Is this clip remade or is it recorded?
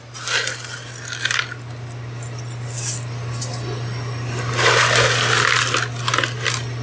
recorded